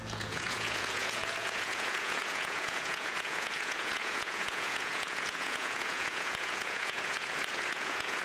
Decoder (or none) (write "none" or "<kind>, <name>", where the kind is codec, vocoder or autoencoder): vocoder, Vocos